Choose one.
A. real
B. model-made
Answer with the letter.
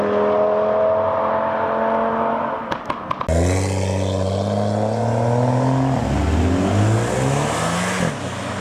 A